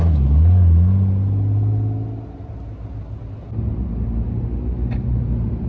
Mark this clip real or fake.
real